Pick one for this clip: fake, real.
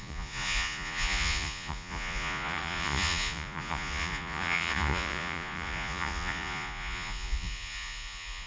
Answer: fake